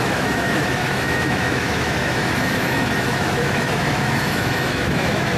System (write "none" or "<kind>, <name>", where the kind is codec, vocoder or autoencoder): autoencoder, DAC-VAE